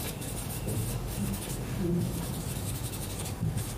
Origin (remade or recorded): remade